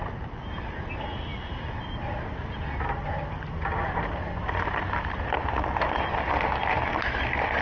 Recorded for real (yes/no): yes